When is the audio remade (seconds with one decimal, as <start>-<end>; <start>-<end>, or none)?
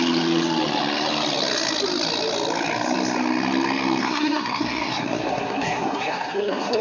4.0-6.8